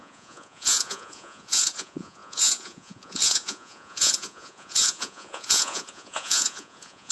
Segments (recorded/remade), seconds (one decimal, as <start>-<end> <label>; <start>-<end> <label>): 0.0-7.1 remade